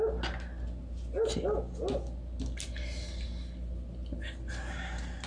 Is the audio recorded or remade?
recorded